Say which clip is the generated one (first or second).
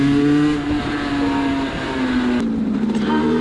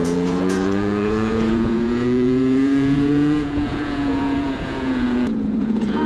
second